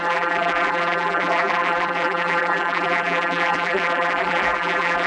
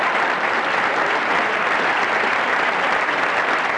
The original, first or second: second